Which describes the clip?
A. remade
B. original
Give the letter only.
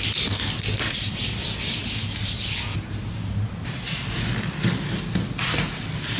B